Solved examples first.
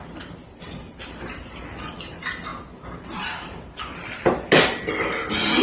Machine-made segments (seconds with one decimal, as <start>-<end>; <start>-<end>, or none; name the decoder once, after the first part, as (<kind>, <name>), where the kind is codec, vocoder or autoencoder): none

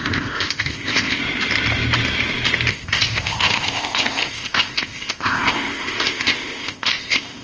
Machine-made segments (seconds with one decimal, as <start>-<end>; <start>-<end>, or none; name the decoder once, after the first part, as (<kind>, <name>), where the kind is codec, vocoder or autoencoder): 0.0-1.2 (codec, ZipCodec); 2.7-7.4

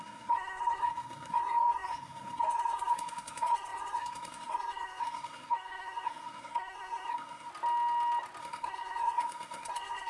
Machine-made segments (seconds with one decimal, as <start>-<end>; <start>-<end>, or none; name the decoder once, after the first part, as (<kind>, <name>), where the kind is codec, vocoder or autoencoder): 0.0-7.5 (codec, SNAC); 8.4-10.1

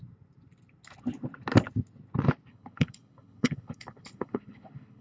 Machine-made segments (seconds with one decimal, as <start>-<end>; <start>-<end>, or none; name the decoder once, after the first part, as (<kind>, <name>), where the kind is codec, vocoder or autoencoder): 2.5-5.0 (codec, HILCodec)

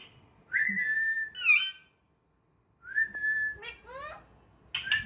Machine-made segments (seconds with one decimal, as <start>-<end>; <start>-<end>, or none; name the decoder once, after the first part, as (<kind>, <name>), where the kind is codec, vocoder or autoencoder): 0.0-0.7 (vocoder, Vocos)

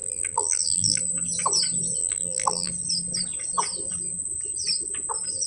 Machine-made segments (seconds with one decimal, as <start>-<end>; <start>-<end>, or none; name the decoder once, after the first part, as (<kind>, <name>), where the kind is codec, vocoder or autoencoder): 0.0-1.0 (vocoder, BigVGAN v2); 2.0-2.7

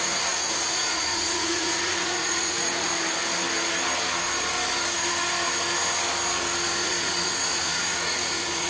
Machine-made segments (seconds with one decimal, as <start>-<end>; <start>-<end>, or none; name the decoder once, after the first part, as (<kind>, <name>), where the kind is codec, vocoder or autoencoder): 0.0-2.9 (vocoder, Vocos); 6.7-8.7